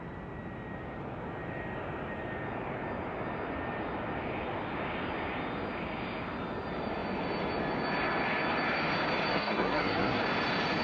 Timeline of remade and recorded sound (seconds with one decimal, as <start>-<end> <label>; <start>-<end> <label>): 0.0-9.3 recorded; 9.3-10.2 remade; 10.2-10.8 recorded